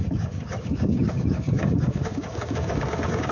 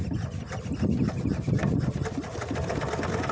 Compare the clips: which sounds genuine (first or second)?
second